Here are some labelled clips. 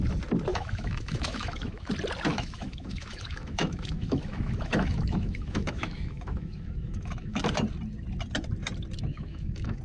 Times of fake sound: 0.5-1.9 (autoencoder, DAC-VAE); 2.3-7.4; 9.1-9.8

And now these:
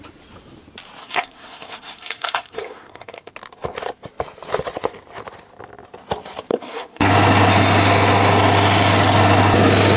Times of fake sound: 1.0-3.3 (codec, SNAC); 6.5-7.1

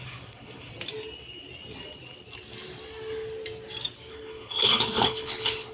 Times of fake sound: 0.0-0.7 (codec, HILCodec); 4.1-5.7

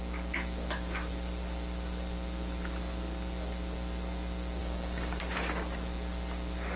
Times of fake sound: 4.6-5.2 (codec, DAC)

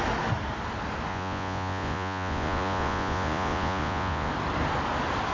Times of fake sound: 1.1-4.3 (vocoder, Vocos)